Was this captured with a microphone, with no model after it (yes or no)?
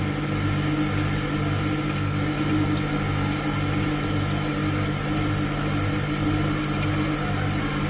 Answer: yes